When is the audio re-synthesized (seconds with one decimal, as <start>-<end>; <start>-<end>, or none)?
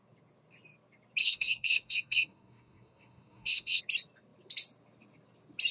1.2-3.8